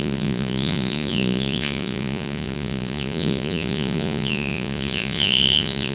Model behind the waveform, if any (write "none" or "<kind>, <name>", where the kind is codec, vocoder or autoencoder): vocoder, Vocos